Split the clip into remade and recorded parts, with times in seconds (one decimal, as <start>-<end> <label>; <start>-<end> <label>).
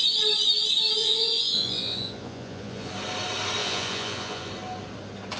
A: 0.0-1.0 recorded; 1.0-2.9 remade; 2.9-3.6 recorded; 3.6-4.5 remade; 4.5-5.4 recorded